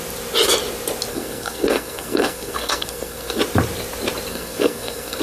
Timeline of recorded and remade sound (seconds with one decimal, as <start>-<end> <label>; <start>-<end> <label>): 0.0-1.1 recorded; 1.1-3.4 remade; 3.4-4.3 recorded; 4.3-5.2 remade